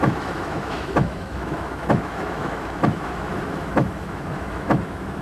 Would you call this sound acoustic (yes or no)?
no